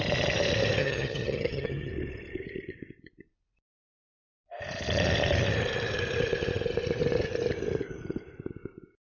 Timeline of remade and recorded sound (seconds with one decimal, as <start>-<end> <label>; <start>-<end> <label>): 0.0-0.8 recorded; 0.8-1.9 remade; 1.9-9.1 recorded